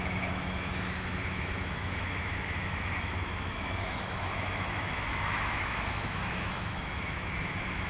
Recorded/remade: remade